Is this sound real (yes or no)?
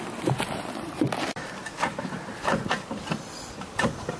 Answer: yes